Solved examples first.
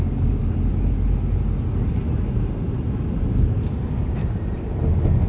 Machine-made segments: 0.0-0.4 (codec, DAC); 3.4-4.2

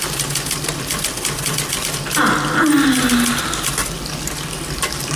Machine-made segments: 3.8-5.2 (vocoder, BigVGAN v2)

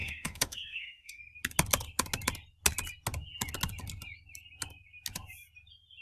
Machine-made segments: 0.0-1.2 (autoencoder, DAC-VAE)

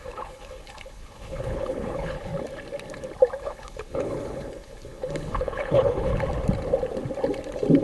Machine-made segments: 0.0-2.3 (codec, HILCodec); 3.4-6.1

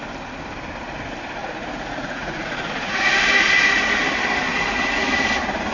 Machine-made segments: 1.4-3.1 (vocoder, Vocos); 4.5-5.1